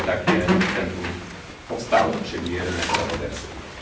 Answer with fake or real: real